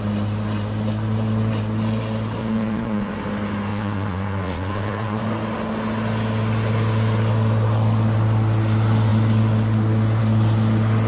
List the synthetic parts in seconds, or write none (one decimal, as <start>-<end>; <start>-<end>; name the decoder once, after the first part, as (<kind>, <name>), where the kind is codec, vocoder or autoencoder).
2.4-3.1 (vocoder, Vocos); 3.7-5.2